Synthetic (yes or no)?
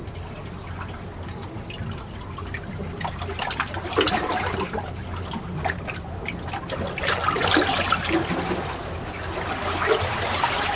no